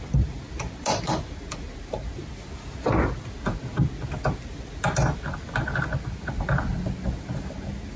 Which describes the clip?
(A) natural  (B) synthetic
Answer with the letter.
A